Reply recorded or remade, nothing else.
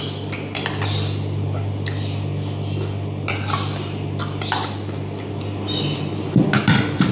recorded